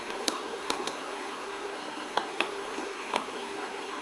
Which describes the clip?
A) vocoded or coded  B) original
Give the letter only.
A